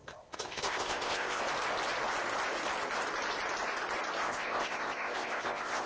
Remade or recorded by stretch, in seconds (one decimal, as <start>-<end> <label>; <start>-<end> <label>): 0.0-1.4 remade; 1.4-4.2 recorded; 4.2-5.9 remade